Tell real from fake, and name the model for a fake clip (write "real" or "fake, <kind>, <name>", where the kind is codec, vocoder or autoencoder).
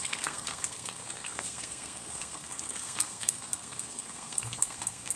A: fake, codec, SNAC